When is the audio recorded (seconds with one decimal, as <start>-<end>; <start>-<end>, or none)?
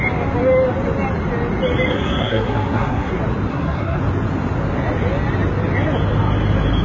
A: 0.0-1.9; 3.1-3.5; 4.0-6.8